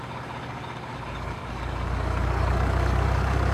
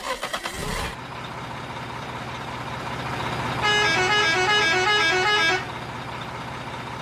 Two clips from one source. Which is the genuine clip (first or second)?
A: second